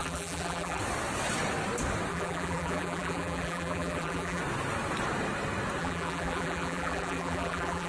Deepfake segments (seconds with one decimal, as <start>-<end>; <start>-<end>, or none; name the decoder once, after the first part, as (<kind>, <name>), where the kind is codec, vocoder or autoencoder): 0.0-0.8 (vocoder, BigVGAN v2); 2.1-4.4; 5.8-7.9